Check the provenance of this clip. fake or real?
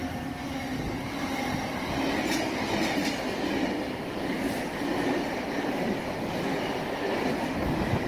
real